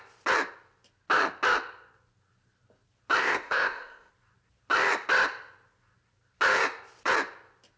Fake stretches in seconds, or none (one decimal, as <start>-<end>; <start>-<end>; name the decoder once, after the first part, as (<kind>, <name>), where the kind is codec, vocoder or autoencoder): 3.2-4.1 (codec, ZipCodec)